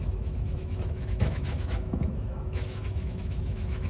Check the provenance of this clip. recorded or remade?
remade